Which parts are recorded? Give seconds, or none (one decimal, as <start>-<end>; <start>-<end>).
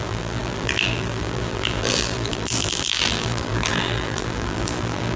none